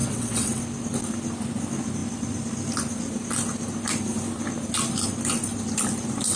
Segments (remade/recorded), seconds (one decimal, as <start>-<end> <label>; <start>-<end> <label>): 0.0-0.6 remade; 0.6-6.4 recorded